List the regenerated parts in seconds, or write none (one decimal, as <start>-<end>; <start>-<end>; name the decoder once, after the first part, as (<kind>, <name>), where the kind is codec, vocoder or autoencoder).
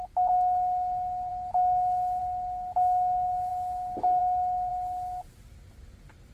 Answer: none